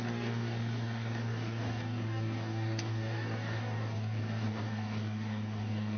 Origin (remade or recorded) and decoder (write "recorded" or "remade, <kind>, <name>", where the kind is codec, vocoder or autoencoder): remade, codec, DAC